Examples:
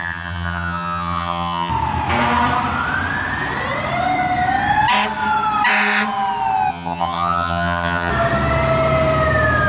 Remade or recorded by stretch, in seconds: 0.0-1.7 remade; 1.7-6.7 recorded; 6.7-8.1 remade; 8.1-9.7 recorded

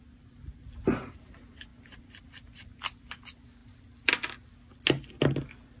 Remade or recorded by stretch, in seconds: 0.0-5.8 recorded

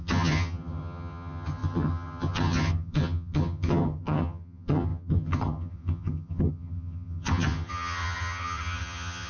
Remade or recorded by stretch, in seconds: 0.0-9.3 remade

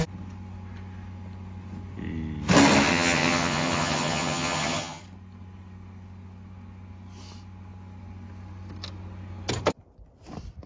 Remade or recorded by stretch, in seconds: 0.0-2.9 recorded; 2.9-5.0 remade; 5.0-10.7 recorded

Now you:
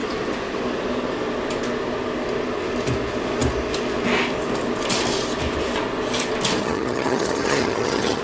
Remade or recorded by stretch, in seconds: 0.0-6.6 recorded; 6.6-8.2 remade